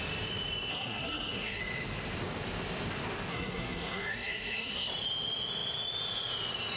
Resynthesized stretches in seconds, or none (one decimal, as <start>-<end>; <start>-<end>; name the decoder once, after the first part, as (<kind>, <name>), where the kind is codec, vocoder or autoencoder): 0.7-1.6 (codec, SNAC); 3.3-4.9

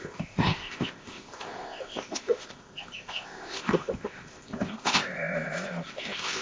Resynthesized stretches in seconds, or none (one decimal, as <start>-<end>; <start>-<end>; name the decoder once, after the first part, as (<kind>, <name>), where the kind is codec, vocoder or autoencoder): 0.0-6.4 (codec, ZipCodec)

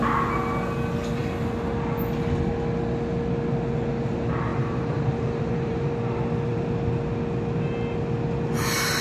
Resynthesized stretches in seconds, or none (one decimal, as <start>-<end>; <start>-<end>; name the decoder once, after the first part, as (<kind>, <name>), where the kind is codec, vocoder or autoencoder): 4.5-5.9 (vocoder, BigVGAN v2)